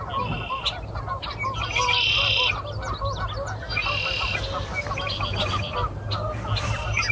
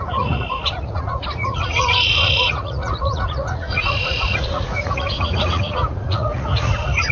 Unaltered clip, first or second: first